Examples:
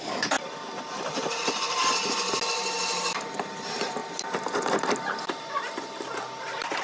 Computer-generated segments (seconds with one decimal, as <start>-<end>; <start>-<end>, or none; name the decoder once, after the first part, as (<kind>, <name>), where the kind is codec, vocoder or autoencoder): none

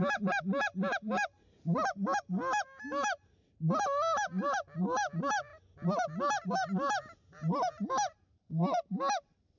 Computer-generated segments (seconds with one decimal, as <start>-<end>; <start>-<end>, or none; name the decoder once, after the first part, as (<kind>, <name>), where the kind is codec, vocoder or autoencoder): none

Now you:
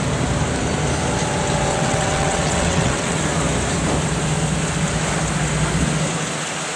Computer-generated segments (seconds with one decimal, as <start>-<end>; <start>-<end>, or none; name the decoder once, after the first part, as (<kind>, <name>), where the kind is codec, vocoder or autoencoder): 1.7-3.2 (vocoder, WaveNeXt)